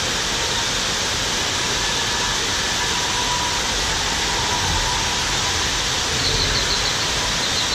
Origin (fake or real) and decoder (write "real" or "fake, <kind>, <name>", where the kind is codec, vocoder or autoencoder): real